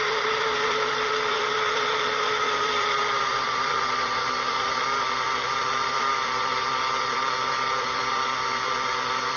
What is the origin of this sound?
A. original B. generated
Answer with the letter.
B